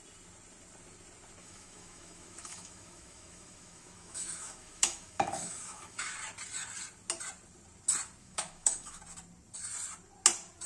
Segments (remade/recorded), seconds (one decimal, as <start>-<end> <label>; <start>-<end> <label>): 0.0-1.4 recorded; 1.4-6.1 remade; 6.1-8.2 recorded; 8.2-9.0 remade; 9.0-10.7 recorded